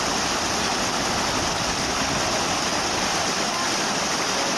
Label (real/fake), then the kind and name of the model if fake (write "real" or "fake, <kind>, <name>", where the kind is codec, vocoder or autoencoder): real